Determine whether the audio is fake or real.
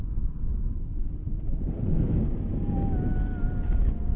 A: real